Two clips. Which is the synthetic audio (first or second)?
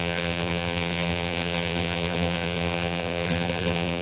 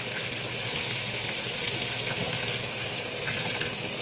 first